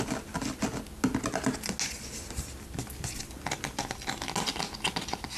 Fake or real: real